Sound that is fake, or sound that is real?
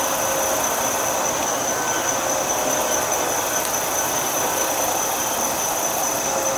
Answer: real